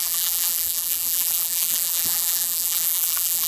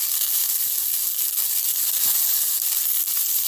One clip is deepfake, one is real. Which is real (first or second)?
second